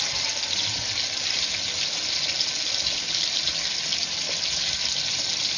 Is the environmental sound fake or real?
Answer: real